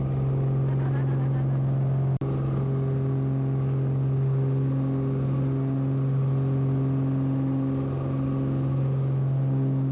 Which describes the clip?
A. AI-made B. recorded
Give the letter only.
B